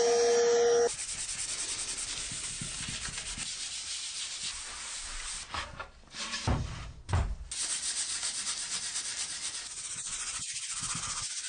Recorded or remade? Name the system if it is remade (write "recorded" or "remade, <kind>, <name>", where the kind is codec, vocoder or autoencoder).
recorded